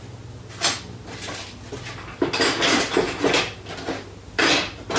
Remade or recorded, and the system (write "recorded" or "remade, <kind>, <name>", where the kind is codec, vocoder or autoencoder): recorded